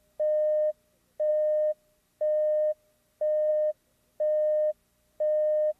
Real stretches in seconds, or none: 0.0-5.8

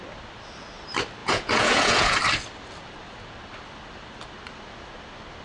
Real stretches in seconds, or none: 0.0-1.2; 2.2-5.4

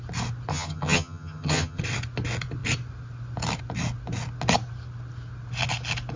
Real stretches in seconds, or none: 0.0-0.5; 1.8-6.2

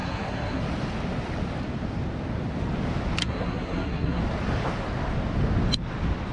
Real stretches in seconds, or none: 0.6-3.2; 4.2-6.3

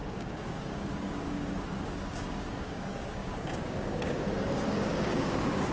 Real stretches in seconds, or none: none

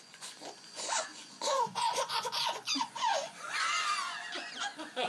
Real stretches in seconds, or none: none

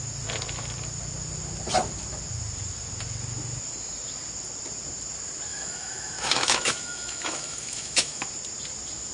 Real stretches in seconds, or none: 0.0-5.5; 8.3-9.1

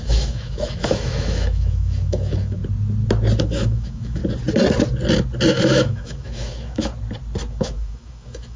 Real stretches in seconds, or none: 2.6-3.4; 4.2-5.5; 6.9-7.5